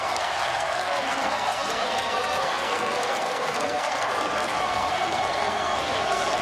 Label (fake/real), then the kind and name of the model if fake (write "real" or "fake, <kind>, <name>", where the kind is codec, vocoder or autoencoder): fake, codec, SNAC